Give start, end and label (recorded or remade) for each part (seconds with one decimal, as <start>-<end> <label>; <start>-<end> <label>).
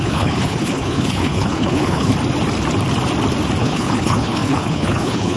0.0-2.1 remade; 2.1-3.6 recorded; 3.6-5.4 remade